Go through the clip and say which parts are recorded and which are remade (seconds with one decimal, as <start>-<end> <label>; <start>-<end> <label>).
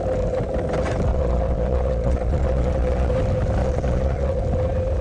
0.0-1.1 recorded; 1.1-3.1 remade; 3.1-3.6 recorded; 3.6-4.4 remade; 4.4-5.0 recorded